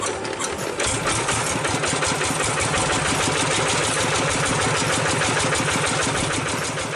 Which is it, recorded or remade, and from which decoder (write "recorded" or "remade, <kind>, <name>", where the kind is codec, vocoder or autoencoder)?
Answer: recorded